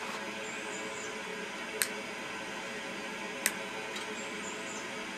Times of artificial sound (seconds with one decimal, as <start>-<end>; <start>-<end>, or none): none